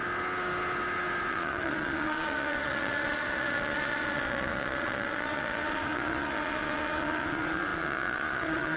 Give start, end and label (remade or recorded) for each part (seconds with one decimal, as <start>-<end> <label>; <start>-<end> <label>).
0.0-1.3 recorded; 1.3-8.8 remade